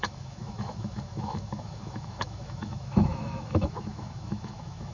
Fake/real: fake